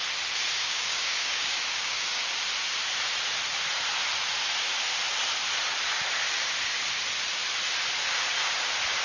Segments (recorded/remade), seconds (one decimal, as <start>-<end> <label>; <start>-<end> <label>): 0.0-0.6 recorded; 0.6-2.2 remade; 2.2-9.0 recorded